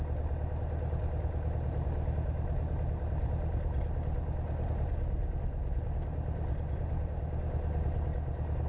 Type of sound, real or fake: real